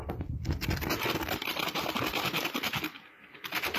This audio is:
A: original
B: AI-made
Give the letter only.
A